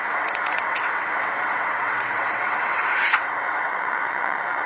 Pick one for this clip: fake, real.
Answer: fake